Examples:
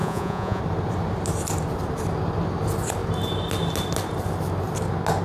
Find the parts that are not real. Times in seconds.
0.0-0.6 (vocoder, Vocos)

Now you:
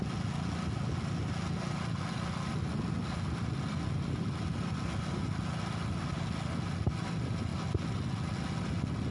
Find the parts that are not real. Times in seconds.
none

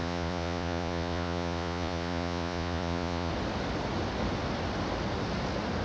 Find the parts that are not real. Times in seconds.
0.0-3.3 (vocoder, Vocos)

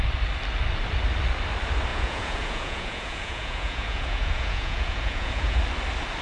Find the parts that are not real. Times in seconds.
1.9-5.6 (vocoder, Vocos)

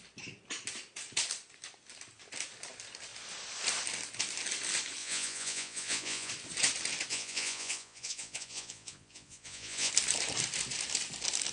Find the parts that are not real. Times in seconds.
5.0-6.3 (vocoder, Vocos); 7.1-9.9

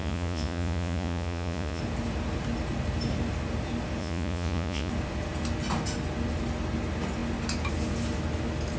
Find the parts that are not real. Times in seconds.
0.0-1.8 (vocoder, Vocos); 4.0-4.9

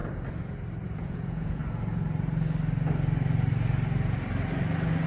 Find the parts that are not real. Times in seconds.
1.0-1.6 (vocoder, Vocos)

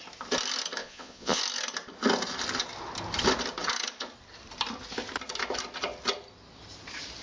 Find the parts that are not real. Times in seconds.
0.8-1.4 (vocoder, Vocos)